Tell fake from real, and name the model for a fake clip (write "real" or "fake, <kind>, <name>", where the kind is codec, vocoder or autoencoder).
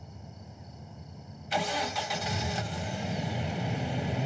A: real